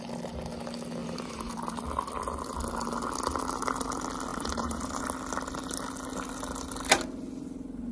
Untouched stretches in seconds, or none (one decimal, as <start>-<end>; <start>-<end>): 0.0-1.0; 1.8-4.3; 5.0-7.9